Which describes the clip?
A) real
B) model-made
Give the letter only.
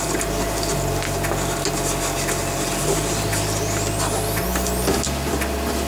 A